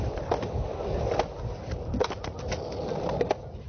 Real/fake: real